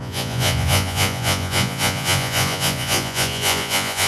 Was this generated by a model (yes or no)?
yes